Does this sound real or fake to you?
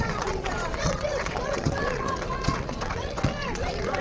fake